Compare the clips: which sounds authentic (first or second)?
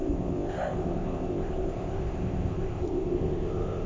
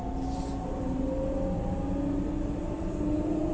second